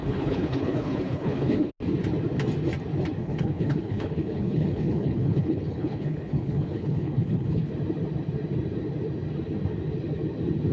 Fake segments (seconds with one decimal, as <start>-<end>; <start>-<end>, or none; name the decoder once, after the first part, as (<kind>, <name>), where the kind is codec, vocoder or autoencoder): 0.0-1.7 (codec, HILCodec); 3.2-7.7